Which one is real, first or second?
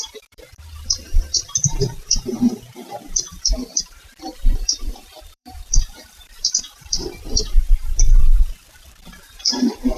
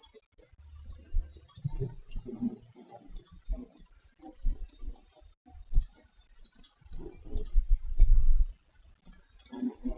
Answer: second